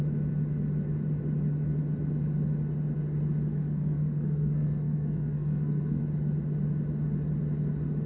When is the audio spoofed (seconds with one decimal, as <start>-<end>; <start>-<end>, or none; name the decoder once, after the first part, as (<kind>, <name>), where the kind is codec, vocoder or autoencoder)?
3.5-6.0 (codec, SNAC)